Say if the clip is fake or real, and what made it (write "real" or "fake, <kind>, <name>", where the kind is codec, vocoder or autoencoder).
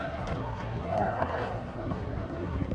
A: fake, codec, SNAC